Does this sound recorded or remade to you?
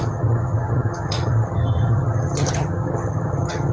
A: remade